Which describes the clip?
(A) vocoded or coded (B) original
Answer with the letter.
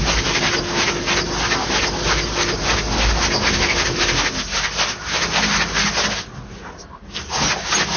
B